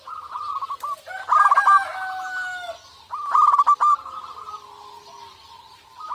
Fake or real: real